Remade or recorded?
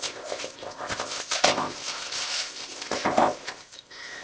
remade